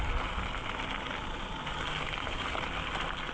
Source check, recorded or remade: recorded